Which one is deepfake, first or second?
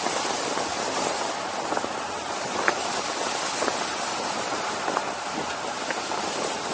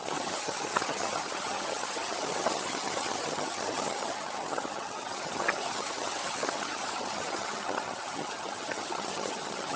second